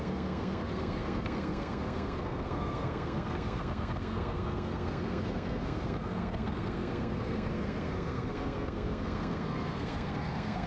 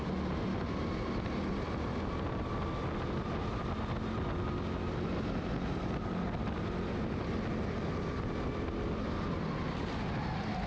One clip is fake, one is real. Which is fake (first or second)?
first